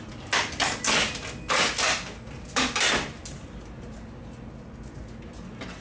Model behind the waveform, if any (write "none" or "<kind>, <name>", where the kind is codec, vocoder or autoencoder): none